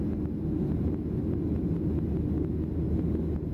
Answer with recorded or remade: recorded